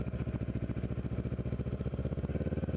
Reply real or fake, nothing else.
real